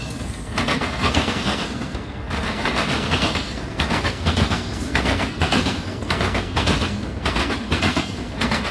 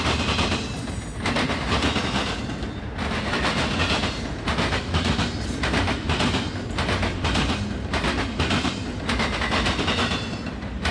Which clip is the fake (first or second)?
first